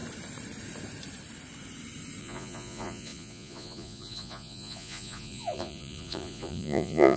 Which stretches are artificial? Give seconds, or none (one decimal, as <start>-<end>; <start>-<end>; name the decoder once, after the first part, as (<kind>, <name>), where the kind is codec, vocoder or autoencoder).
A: 2.2-7.2 (vocoder, Vocos)